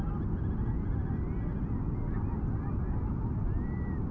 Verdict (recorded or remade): recorded